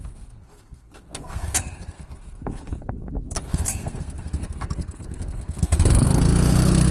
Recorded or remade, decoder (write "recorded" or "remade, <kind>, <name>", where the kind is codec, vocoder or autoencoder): remade, codec, SNAC